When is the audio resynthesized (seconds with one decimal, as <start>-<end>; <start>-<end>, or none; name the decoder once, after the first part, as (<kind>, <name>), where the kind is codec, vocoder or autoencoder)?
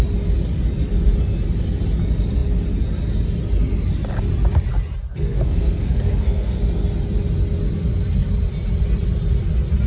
5.1-6.6 (codec, SNAC)